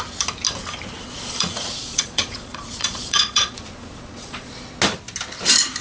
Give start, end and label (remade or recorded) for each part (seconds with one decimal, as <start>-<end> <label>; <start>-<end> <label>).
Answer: 0.0-1.0 recorded; 1.0-4.5 remade; 4.5-5.8 recorded